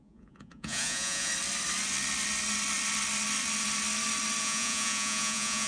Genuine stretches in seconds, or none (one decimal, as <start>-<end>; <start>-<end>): 1.3-4.4